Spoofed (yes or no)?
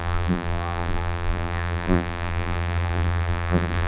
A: yes